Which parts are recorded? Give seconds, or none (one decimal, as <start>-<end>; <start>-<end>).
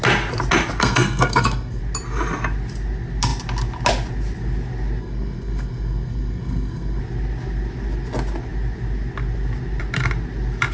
0.0-0.8; 1.8-5.0; 7.0-10.7